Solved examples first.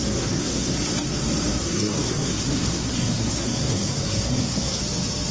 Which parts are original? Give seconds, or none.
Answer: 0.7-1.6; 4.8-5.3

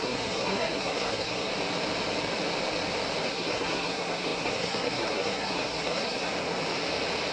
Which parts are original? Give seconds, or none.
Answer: 1.5-3.3; 6.3-7.3